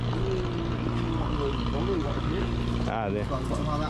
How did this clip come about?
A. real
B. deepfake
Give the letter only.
A